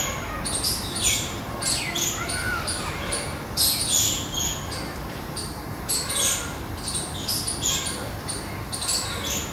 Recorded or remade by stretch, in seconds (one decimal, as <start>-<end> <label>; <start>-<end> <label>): 0.0-9.5 recorded